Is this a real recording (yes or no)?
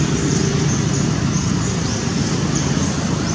no